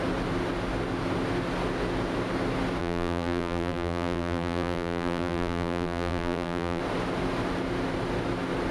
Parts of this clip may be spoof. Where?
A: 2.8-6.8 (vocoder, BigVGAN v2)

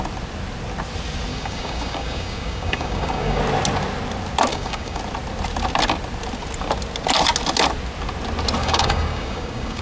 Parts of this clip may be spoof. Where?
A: 1.3-3.4 (codec, DAC); 4.5-5.0; 8.6-9.8

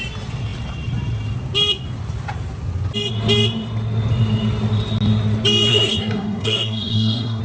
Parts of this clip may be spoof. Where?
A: 5.7-7.4 (codec, SNAC)